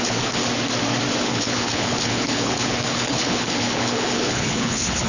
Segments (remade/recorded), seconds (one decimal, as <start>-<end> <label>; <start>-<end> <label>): 0.0-0.4 remade; 0.4-1.2 recorded; 1.2-5.1 remade